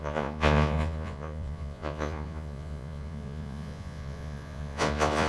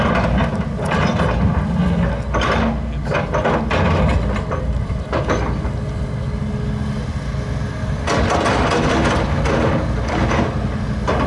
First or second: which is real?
second